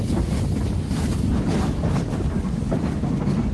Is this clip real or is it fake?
real